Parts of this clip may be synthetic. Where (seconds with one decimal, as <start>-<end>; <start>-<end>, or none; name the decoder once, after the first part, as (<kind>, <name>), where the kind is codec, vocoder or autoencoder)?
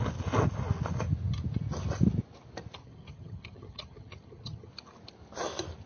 2.8-4.7 (vocoder, HiFi-GAN)